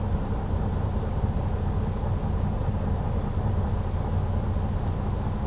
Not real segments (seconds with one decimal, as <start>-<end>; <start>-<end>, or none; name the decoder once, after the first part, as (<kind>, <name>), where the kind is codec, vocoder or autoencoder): none